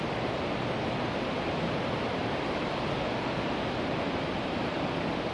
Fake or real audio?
real